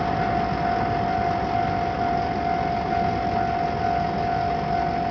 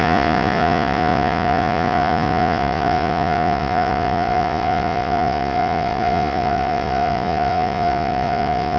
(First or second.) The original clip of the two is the first